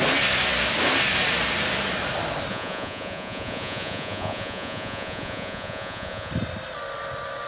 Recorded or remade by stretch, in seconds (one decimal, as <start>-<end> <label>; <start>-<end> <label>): 0.0-2.5 recorded; 2.5-6.3 remade; 6.3-7.5 recorded